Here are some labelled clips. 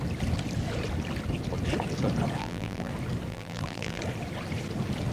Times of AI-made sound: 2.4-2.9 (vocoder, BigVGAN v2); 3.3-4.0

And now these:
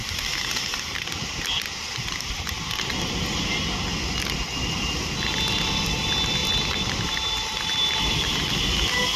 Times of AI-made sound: 6.4-8.4 (vocoder, BigVGAN v2)

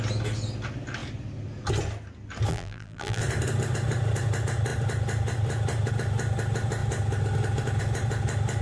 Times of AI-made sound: 2.5-3.2 (vocoder, BigVGAN v2)

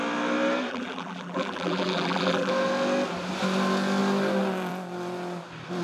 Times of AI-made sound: 0.7-2.5 (vocoder, BigVGAN v2)

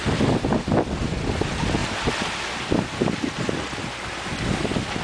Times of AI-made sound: none

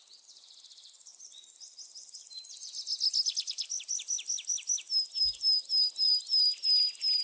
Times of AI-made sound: 0.0-1.1 (vocoder, BigVGAN v2); 5.2-7.2

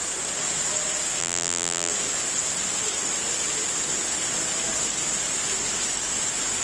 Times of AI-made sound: 1.2-1.9 (vocoder, BigVGAN v2)